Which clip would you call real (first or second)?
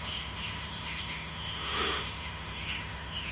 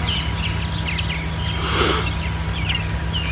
second